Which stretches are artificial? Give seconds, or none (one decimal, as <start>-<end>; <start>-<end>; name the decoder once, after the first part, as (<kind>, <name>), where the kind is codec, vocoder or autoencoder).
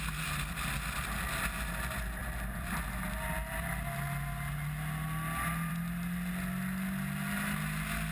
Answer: none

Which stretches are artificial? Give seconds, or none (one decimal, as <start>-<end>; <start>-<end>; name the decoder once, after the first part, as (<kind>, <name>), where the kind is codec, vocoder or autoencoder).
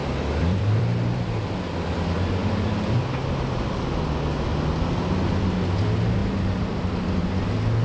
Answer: 0.0-1.3 (vocoder, BigVGAN v2); 2.4-3.0; 6.2-7.0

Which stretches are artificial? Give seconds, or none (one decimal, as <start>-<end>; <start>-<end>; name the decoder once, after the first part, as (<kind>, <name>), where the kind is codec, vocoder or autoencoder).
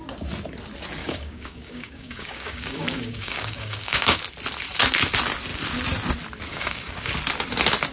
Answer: 1.0-4.2 (codec, DAC); 6.5-7.1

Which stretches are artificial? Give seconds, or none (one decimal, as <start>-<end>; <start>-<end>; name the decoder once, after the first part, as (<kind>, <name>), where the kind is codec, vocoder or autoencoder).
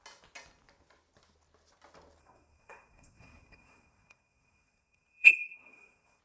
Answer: 2.2-6.2 (codec, SNAC)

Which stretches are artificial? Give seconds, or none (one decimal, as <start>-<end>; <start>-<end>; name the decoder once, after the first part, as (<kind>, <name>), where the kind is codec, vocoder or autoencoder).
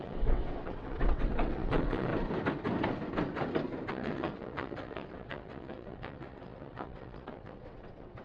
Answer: 0.0-2.1 (vocoder, WaveNeXt); 3.9-8.2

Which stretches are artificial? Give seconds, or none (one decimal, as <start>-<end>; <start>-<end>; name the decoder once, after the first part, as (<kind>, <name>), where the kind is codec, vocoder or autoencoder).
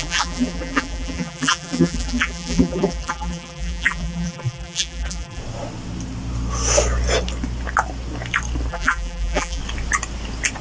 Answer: 0.0-5.4 (vocoder, BigVGAN v2); 8.7-9.6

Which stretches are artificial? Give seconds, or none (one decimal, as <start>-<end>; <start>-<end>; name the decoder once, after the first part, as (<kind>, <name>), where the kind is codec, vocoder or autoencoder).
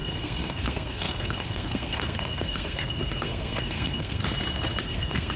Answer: 0.0-4.2 (codec, SNAC); 4.8-5.4